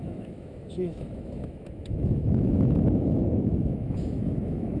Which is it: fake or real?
fake